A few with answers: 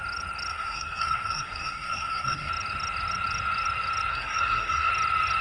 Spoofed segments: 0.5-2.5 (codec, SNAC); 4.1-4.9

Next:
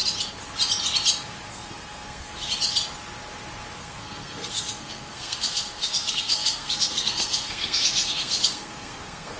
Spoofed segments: 1.5-2.3 (codec, SNAC); 3.8-9.4

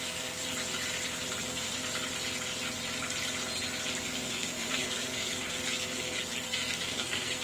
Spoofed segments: 0.0-0.4 (codec, SNAC); 1.4-1.8; 4.0-7.4

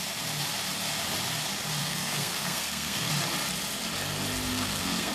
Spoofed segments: 1.8-3.1 (codec, SNAC); 4.5-5.1